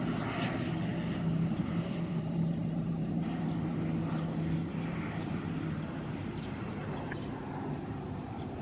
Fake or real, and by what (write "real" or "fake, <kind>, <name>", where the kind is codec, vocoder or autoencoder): real